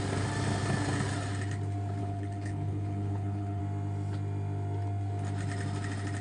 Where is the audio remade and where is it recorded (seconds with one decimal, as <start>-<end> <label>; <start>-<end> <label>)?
0.0-2.0 recorded; 2.0-3.6 remade; 3.6-6.2 recorded